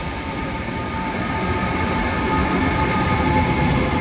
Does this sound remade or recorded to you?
recorded